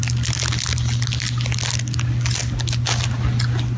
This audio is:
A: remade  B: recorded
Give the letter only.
B